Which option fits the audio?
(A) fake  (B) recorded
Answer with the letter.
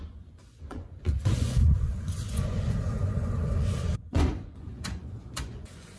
A